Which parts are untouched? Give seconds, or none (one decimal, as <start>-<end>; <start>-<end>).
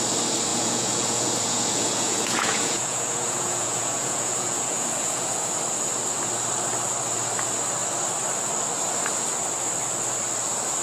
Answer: 0.0-0.5; 5.5-10.8